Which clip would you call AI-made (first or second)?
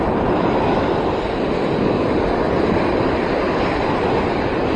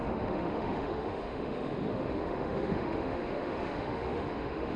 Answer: second